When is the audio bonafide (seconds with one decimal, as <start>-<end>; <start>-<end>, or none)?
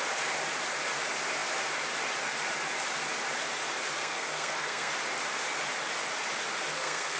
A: 0.0-4.0; 4.9-6.7